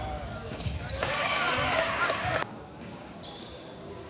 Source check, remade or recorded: remade